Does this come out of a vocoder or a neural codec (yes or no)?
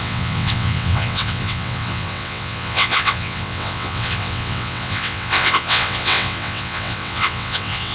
yes